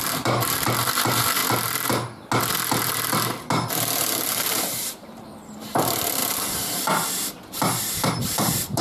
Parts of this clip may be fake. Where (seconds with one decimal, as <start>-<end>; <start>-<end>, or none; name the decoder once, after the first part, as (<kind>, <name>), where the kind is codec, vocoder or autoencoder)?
0.0-1.4 (vocoder, BigVGAN v2); 4.4-6.2; 8.2-8.8